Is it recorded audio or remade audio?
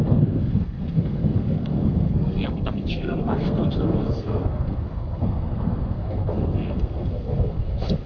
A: remade